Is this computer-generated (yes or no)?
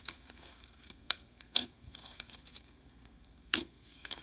yes